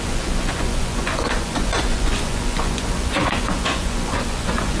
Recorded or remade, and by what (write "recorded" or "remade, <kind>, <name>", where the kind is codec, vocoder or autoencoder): remade, vocoder, Vocos